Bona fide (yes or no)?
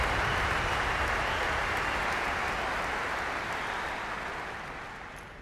yes